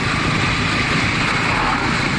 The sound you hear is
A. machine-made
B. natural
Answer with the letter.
B